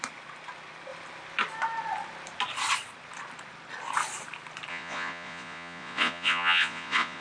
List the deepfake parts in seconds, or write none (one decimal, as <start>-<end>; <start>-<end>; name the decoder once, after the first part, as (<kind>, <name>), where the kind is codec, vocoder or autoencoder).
4.7-7.2 (vocoder, Vocos)